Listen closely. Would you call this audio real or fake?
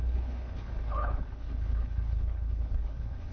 fake